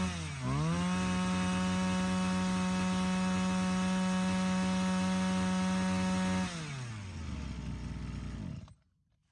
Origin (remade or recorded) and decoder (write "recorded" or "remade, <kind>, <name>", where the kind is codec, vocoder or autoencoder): recorded